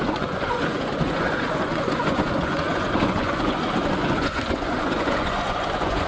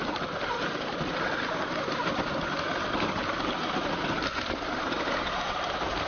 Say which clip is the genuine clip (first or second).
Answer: second